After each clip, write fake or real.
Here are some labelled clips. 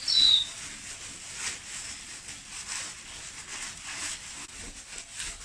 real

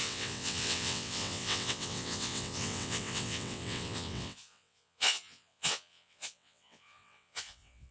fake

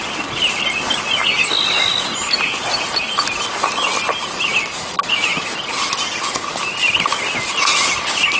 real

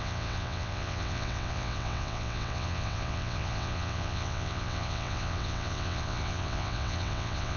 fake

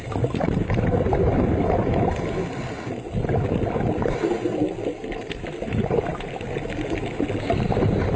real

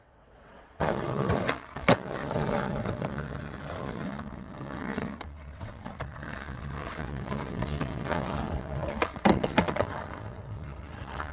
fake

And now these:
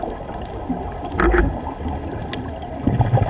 real